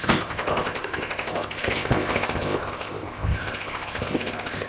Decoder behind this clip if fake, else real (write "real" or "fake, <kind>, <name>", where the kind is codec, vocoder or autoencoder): fake, codec, ZipCodec